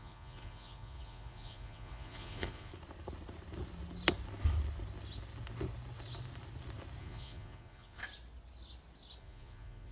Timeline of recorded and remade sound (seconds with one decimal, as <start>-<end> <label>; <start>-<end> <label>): 0.0-2.7 remade; 2.7-7.0 recorded; 7.0-8.0 remade; 8.0-9.2 recorded; 9.2-9.9 remade